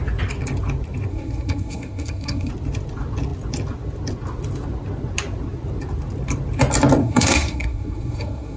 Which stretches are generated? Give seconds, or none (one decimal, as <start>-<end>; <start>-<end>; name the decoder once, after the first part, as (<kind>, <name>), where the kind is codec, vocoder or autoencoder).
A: 1.1-2.5 (codec, SNAC); 7.0-8.6